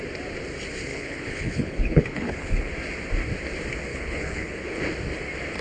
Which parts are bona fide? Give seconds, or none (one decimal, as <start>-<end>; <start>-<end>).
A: 0.0-0.9; 2.7-3.9; 4.8-5.6